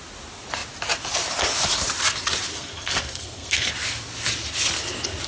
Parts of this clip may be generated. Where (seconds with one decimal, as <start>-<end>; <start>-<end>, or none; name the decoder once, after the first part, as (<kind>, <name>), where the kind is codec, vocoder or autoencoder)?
2.5-3.7 (codec, SNAC)